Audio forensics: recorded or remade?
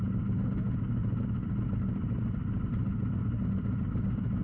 recorded